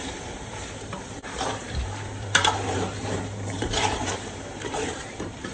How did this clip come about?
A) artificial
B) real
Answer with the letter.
A